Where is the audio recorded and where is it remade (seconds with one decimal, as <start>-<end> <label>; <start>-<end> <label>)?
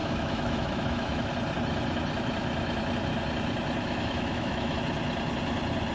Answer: 0.0-1.3 remade; 1.3-3.8 recorded; 3.8-4.8 remade; 4.8-5.9 recorded